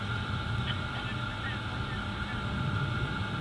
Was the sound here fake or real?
real